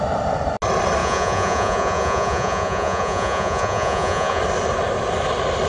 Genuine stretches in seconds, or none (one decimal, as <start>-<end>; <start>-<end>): 0.0-1.0; 4.4-5.7